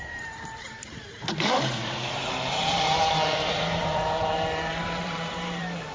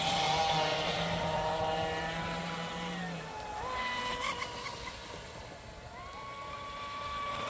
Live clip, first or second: second